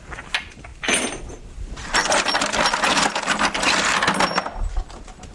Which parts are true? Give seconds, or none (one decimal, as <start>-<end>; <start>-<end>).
0.0-5.3